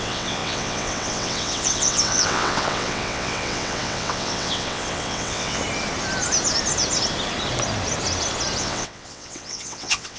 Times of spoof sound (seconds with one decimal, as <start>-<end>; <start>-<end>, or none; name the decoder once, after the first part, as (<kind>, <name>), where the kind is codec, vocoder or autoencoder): 0.0-5.6 (vocoder, WaveNeXt); 8.6-10.2